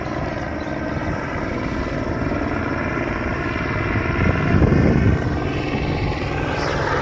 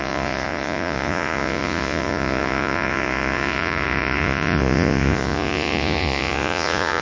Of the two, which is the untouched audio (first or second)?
first